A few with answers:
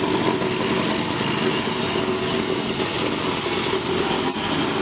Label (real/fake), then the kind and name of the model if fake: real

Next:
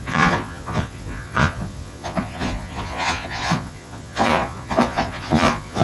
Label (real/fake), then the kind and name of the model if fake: fake, vocoder, Vocos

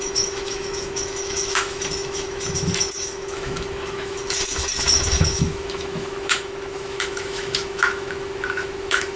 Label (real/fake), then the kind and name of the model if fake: fake, autoencoder, DAC-VAE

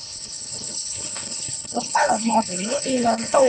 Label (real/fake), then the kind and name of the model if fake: fake, codec, HILCodec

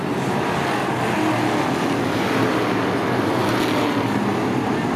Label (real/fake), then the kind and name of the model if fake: real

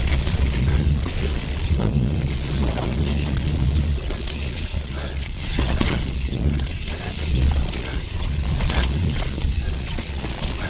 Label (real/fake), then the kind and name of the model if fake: fake, vocoder, Vocos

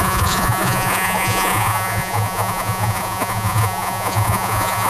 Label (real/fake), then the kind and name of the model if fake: fake, vocoder, Vocos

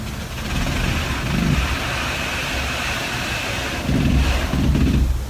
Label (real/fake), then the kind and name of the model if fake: real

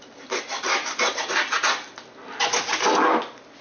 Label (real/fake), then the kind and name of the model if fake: real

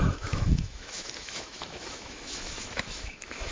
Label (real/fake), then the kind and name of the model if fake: fake, autoencoder, DAC-VAE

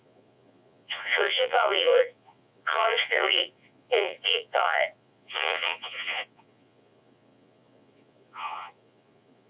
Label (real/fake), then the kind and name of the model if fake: fake, vocoder, Vocos